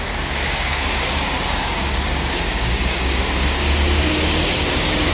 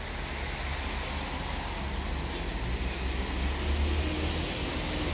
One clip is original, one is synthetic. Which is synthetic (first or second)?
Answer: first